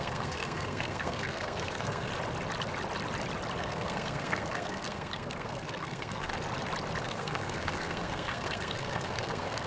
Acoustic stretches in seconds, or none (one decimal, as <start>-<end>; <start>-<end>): 2.1-3.6; 6.3-7.0

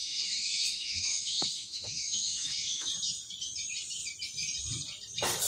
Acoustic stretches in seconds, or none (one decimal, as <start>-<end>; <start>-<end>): 2.9-5.5

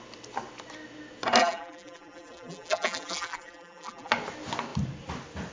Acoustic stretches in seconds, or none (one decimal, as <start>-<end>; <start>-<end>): 0.0-1.4; 4.1-5.5

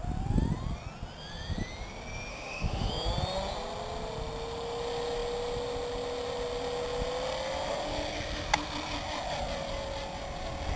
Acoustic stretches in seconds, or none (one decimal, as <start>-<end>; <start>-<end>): 0.0-2.3; 2.9-10.8

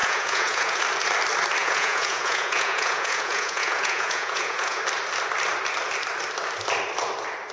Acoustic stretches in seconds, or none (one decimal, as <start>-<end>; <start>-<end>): 0.8-1.6; 4.8-7.5

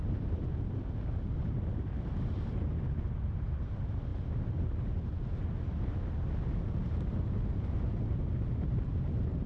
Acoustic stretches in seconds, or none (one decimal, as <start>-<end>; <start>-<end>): 0.0-9.5